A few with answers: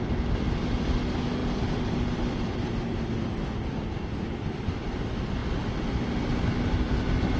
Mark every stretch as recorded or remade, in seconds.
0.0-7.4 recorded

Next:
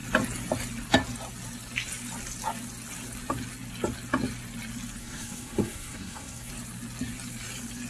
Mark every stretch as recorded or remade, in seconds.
0.0-5.0 recorded; 5.0-6.5 remade; 6.5-7.9 recorded

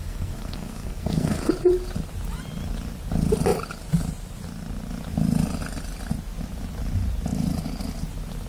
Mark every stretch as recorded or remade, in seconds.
0.0-1.5 remade; 1.5-8.5 recorded

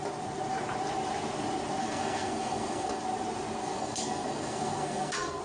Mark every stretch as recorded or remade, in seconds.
0.0-1.8 recorded; 1.8-3.0 remade; 3.0-3.6 recorded; 3.6-5.4 remade